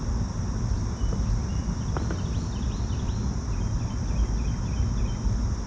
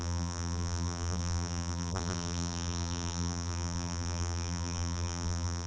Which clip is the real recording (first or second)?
first